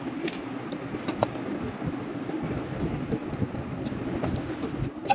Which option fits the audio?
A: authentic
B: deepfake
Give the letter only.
A